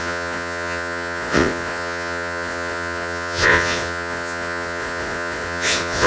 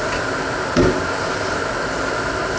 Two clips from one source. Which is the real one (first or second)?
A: second